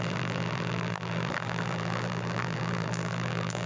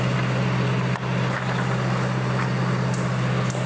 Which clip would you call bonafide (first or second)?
second